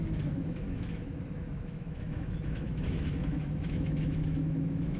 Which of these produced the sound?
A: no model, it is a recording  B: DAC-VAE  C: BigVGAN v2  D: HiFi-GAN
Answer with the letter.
B